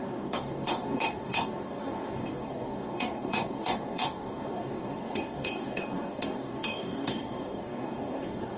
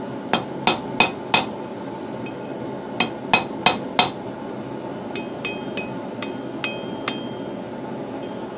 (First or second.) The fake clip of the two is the first